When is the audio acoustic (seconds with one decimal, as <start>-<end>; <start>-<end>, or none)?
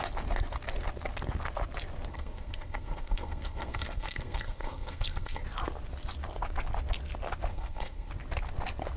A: 0.0-2.1; 5.4-7.5; 8.1-9.0